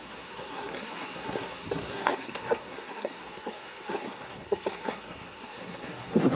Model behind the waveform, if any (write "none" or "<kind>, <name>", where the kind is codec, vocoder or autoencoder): codec, SNAC